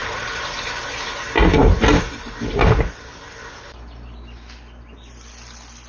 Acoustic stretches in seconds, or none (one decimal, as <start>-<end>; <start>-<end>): 0.0-5.9